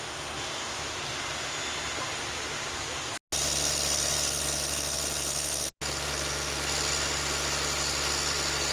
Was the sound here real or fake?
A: real